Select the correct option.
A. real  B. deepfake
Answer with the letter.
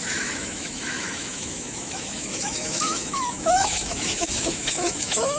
B